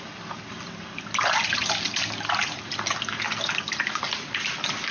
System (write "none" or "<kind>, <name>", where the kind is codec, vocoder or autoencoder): none